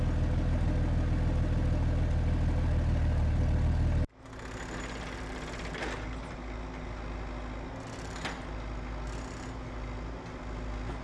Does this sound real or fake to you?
real